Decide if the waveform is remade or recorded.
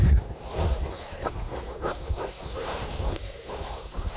remade